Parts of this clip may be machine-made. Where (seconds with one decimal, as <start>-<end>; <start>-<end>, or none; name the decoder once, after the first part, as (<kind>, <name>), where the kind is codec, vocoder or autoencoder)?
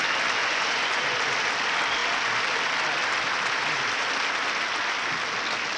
0.4-1.0 (vocoder, Vocos)